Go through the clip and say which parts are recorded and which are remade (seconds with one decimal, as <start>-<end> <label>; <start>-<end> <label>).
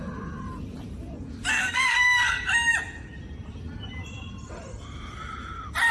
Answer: 0.0-1.5 recorded; 1.5-2.4 remade; 2.4-5.9 recorded